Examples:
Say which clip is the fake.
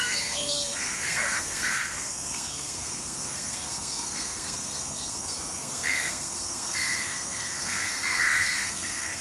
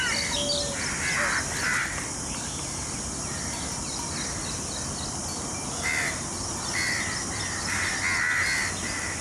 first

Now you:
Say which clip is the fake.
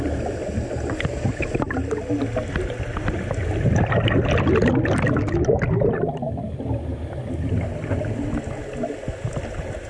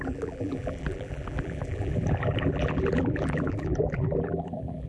second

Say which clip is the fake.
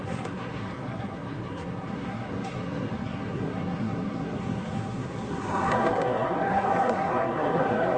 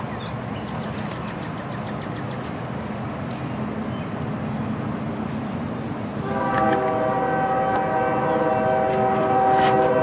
first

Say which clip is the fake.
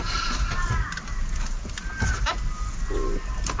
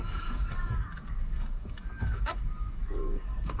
second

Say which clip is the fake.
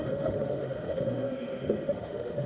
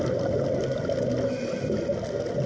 first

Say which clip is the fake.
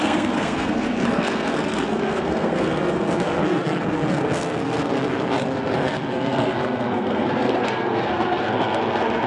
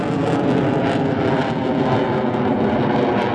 first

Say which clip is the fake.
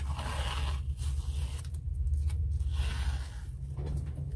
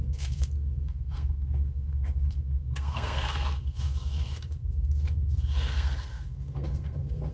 second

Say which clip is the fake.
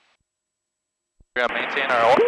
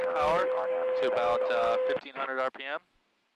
second